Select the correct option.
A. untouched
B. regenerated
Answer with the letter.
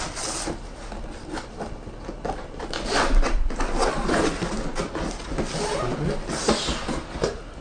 A